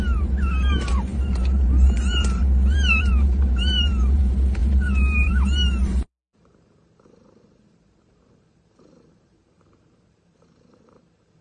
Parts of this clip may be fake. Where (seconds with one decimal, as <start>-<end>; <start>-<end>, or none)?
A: 0.0-11.4